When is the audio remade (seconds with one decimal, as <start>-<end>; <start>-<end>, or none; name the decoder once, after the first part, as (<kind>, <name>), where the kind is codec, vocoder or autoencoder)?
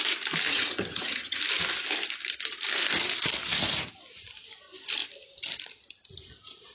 0.5-1.4 (vocoder, HiFi-GAN)